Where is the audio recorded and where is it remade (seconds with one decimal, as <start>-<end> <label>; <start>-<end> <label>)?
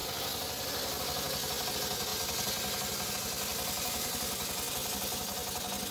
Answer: 0.0-5.9 recorded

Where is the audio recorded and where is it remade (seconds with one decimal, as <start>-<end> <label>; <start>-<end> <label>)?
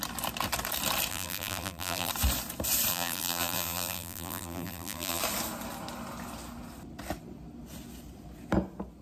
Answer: 0.0-1.1 recorded; 1.1-2.1 remade; 2.1-2.9 recorded; 2.9-5.2 remade; 5.2-9.0 recorded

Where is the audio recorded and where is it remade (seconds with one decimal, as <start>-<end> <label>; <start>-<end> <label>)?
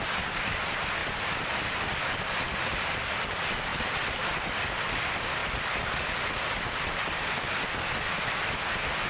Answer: 0.0-1.0 recorded; 1.0-1.8 remade; 1.8-9.1 recorded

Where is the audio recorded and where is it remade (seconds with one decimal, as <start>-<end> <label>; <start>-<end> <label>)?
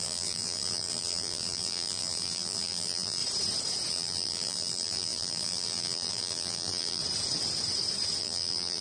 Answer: 0.0-3.2 remade; 3.2-3.9 recorded; 3.9-7.0 remade; 7.0-8.2 recorded; 8.2-8.8 remade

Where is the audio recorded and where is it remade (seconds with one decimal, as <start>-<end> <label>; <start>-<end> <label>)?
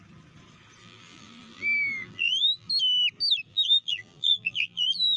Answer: 0.0-0.8 recorded; 0.8-2.7 remade; 2.7-3.5 recorded; 3.5-5.2 remade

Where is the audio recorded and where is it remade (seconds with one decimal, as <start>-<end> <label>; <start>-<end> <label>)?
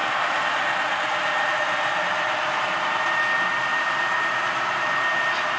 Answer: 0.0-2.7 remade; 2.7-3.7 recorded; 3.7-5.6 remade